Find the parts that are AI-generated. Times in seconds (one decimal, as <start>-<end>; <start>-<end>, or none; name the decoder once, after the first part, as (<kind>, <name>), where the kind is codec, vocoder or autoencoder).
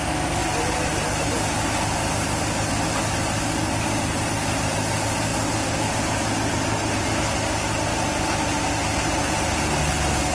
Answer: 7.9-8.6 (vocoder, BigVGAN v2)